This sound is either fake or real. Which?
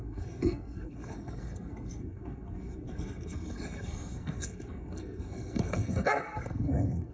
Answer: fake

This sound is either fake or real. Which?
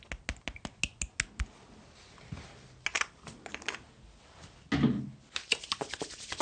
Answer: real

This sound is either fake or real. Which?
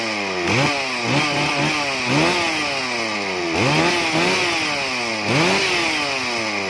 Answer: real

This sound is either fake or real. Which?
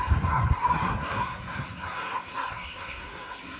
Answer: fake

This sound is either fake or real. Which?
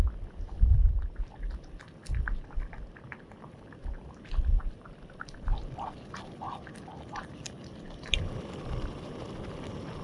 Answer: real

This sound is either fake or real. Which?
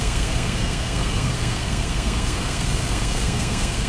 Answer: fake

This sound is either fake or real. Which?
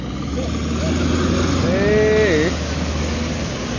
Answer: real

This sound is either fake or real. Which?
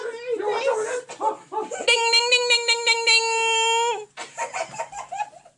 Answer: real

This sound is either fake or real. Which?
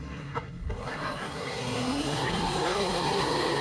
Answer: fake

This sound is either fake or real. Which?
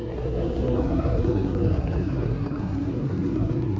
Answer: fake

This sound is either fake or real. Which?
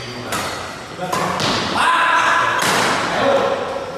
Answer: real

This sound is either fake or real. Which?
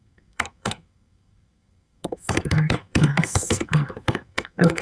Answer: fake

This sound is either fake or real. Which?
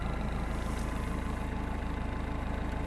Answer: real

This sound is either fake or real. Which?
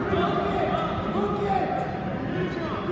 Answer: real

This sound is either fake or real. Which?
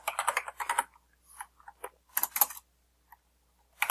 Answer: real